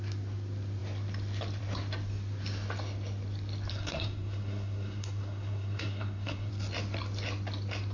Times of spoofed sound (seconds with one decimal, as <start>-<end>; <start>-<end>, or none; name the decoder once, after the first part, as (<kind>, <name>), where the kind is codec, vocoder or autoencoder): 3.7-6.5 (codec, SNAC)